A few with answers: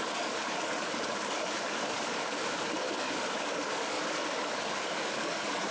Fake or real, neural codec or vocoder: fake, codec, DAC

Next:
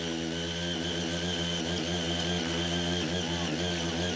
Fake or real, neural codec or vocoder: real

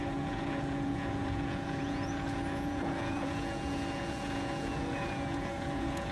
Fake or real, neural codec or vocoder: fake, vocoder, Vocos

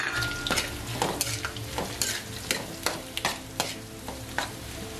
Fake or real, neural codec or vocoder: real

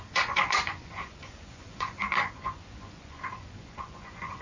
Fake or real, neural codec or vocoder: fake, vocoder, Vocos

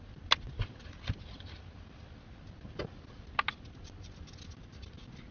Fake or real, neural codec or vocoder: real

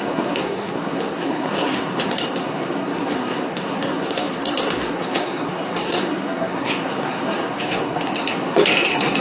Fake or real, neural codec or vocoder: fake, codec, SNAC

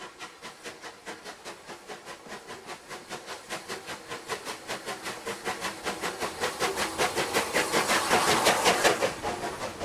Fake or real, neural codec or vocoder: real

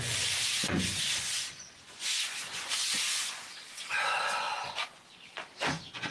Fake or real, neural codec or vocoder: fake, vocoder, Vocos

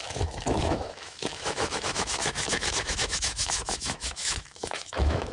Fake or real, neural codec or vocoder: fake, autoencoder, DAC-VAE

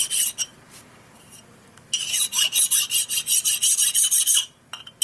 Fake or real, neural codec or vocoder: real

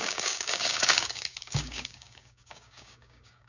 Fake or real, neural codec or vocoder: fake, codec, DAC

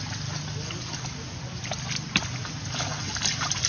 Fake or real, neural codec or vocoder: real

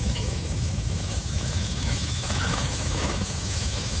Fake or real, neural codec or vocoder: fake, autoencoder, DAC-VAE